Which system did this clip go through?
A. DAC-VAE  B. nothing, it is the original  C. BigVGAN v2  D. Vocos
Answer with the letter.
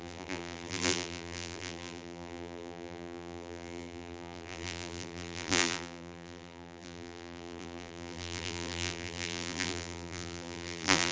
C